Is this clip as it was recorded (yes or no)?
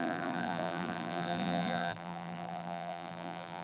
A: no